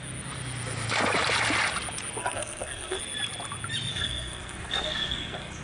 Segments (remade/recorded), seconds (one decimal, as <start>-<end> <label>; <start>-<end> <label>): 0.0-2.2 recorded; 2.2-3.0 remade; 3.0-3.9 recorded; 3.9-5.6 remade